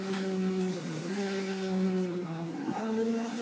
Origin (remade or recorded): remade